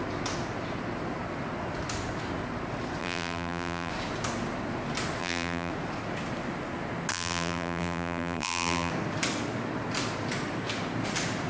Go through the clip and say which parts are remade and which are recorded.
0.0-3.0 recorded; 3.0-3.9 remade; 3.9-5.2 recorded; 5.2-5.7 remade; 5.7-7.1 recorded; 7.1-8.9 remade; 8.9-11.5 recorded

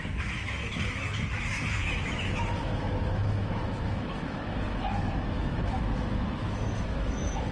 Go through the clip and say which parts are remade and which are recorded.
0.0-7.5 remade

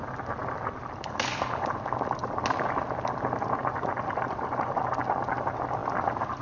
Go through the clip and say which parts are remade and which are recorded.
0.0-6.4 recorded

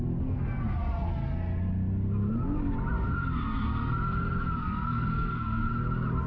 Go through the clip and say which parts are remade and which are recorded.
0.0-4.6 recorded; 4.6-5.7 remade; 5.7-6.3 recorded

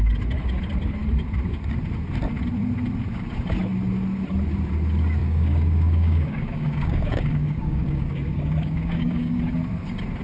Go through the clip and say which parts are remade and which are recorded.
0.0-5.2 recorded; 5.2-9.4 remade; 9.4-10.2 recorded